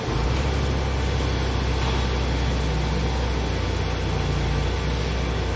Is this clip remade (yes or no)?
no